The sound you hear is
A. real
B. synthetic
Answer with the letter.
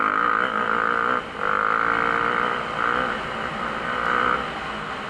A